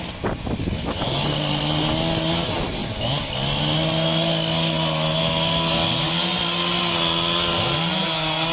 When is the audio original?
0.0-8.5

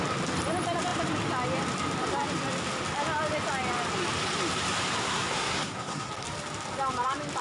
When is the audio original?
0.0-5.0; 6.1-7.4

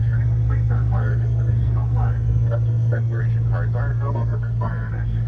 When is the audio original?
3.2-3.9

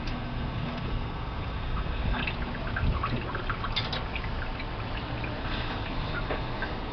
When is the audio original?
2.2-5.4

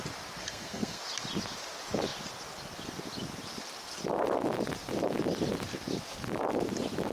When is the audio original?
0.0-0.4; 1.0-7.1

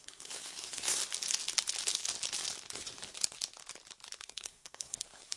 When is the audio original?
1.0-4.2